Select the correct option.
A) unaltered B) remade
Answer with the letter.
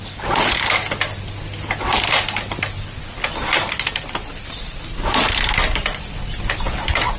A